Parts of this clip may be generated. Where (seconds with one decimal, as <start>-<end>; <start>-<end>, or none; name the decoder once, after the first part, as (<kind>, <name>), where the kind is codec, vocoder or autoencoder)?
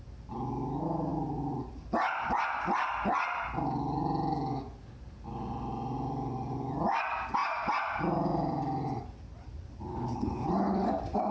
9.9-10.5 (codec, HILCodec)